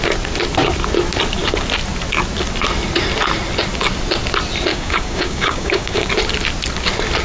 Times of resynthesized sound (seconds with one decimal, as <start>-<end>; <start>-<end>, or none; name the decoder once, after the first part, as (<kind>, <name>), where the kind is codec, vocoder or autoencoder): 4.7-6.1 (codec, DAC)